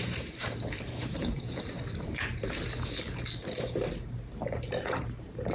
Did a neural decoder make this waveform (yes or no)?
yes